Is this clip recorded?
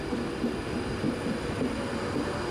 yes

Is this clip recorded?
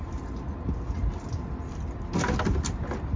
yes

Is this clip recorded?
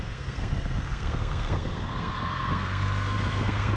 no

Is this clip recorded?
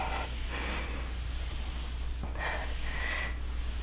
yes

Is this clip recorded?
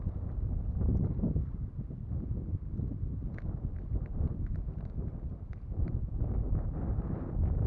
yes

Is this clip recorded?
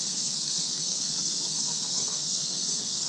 no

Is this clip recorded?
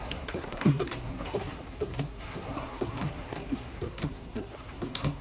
no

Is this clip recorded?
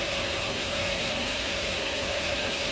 no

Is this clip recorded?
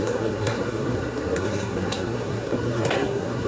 no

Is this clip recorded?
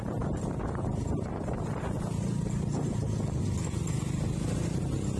yes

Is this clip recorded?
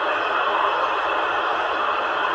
yes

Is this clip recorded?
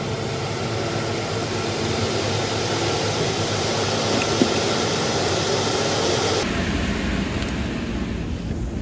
yes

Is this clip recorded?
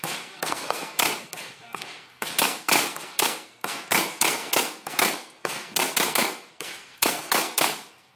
no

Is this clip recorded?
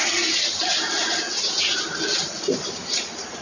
yes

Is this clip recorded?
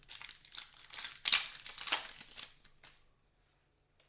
yes